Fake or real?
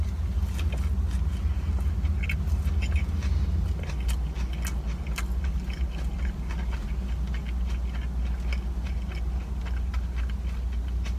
real